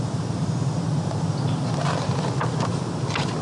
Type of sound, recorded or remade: recorded